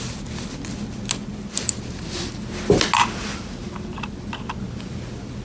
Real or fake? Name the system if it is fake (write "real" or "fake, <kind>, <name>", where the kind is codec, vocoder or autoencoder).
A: real